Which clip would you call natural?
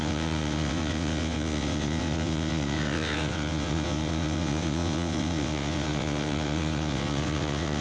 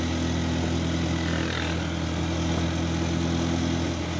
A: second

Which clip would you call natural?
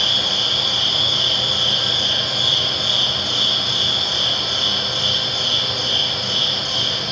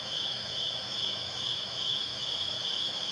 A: first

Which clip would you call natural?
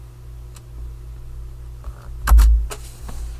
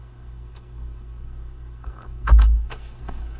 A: first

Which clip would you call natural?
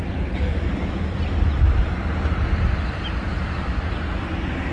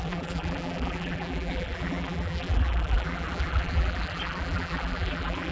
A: first